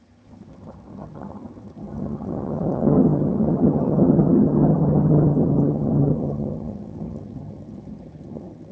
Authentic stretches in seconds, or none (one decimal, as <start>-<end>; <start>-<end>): none